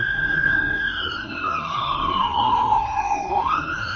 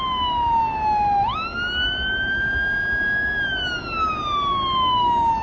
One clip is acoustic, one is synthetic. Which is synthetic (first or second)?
first